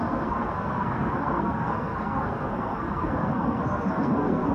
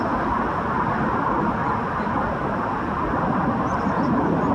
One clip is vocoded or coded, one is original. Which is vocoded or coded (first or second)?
first